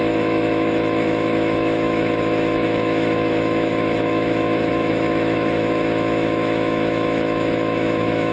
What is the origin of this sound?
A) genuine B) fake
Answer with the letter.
B